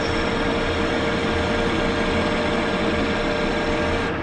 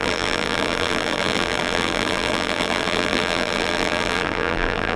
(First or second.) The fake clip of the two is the second